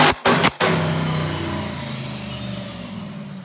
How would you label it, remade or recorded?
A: recorded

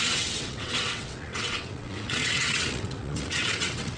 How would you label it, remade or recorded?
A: remade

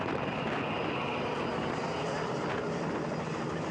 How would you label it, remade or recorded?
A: recorded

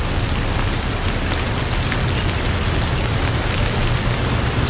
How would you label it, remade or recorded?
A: recorded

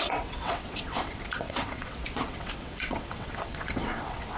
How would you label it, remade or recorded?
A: remade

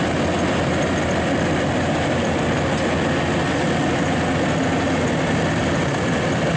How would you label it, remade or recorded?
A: recorded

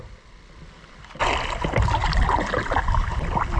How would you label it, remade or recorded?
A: recorded